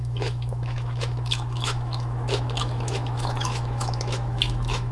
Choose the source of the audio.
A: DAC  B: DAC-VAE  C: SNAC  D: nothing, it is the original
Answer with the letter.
B